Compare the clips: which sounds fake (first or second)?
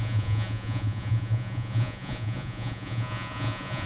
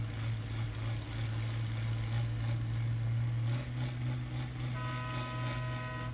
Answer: first